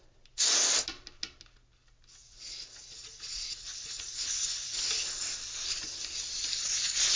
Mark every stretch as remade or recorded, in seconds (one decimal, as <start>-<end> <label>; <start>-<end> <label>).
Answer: 0.0-2.2 recorded; 2.2-4.8 remade; 4.8-7.2 recorded